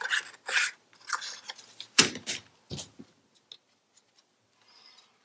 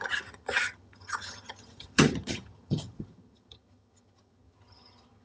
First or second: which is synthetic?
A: second